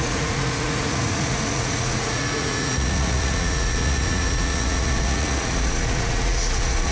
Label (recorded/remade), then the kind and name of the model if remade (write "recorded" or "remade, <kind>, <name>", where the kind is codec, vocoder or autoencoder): remade, vocoder, Vocos